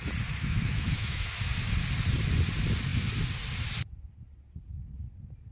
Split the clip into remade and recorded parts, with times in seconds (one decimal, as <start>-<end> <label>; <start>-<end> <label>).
0.0-0.4 recorded; 0.4-1.3 remade; 1.3-5.5 recorded